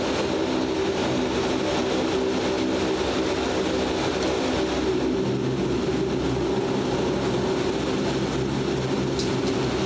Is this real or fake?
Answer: real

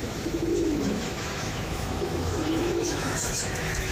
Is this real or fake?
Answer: fake